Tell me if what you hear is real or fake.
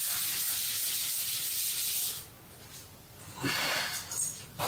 fake